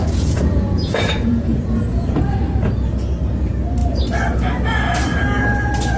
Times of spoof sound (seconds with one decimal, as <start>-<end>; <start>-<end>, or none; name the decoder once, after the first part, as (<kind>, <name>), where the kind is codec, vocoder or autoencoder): 0.0-2.2 (vocoder, Vocos)